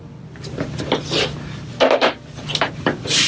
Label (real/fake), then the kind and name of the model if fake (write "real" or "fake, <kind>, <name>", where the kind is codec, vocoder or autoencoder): real